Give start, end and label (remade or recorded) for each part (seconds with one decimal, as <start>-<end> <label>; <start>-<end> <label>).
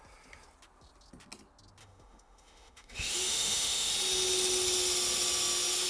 0.0-1.8 recorded; 1.8-3.9 remade; 3.9-5.9 recorded